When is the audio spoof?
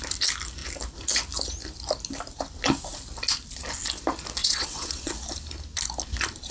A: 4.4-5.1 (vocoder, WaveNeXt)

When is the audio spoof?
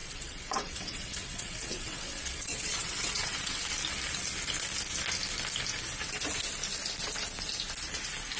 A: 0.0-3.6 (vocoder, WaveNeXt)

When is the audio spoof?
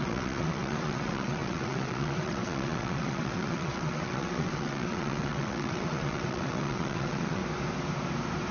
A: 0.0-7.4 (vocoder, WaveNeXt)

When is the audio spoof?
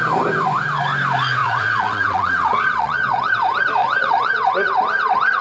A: 1.4-3.3 (vocoder, WaveNeXt); 3.8-4.5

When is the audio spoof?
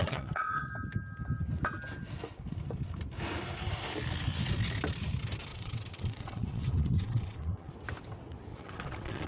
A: 0.0-0.7 (vocoder, WaveNeXt); 5.5-7.7; 8.5-9.3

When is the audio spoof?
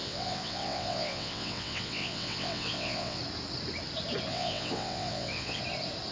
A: 0.0-3.2 (vocoder, WaveNeXt); 4.3-5.6